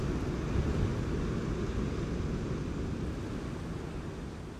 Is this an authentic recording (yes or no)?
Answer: yes